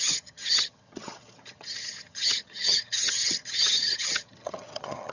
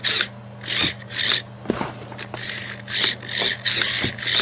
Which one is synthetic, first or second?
first